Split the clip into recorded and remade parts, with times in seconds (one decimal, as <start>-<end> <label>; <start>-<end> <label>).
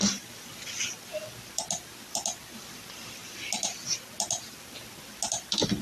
0.0-1.1 recorded; 1.1-1.6 remade; 1.6-5.8 recorded